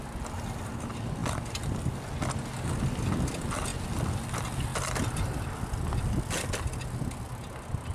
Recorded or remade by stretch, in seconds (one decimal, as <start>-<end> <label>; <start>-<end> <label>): 0.0-7.9 recorded

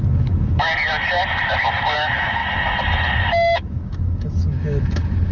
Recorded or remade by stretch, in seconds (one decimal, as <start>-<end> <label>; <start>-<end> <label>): 0.0-0.7 remade; 0.7-1.6 recorded; 1.6-2.4 remade; 2.4-3.2 recorded; 3.2-5.3 remade

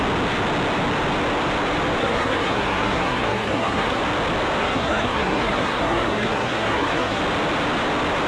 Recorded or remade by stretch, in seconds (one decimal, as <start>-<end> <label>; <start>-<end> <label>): 0.0-2.0 recorded; 2.0-4.0 remade; 4.0-4.6 recorded; 4.6-7.2 remade; 7.2-8.3 recorded